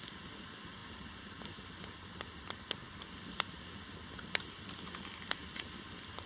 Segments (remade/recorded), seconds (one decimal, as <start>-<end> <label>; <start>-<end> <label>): 0.0-6.3 recorded